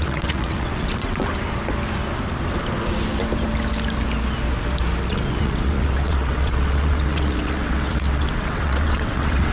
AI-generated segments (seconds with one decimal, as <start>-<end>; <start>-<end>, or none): 0.0-1.3; 5.1-9.5